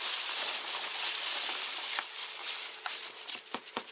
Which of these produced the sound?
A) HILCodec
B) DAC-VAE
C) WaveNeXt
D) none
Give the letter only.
D